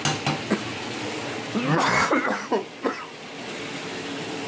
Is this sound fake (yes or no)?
no